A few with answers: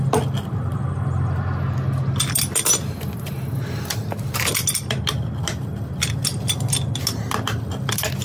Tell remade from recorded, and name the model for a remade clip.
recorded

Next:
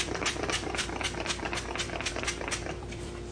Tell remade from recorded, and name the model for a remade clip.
remade, vocoder, BigVGAN v2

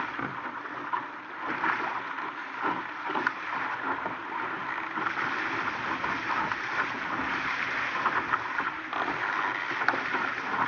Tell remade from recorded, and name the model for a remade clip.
recorded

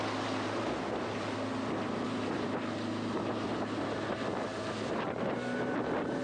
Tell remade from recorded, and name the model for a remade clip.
recorded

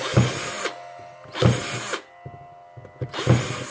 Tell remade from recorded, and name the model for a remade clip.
recorded